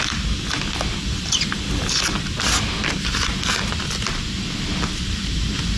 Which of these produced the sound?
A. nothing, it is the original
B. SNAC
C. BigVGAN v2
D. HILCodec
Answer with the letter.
A